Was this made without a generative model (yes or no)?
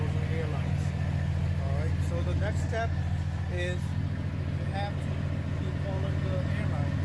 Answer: yes